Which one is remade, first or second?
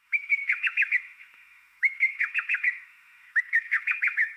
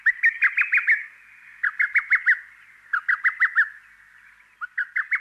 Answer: first